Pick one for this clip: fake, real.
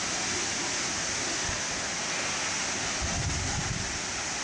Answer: real